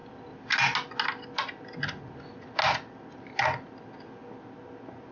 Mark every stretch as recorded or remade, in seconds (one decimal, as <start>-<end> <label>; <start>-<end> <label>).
0.0-5.1 recorded